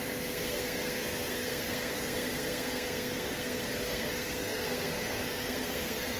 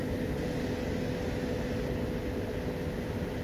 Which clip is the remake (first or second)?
first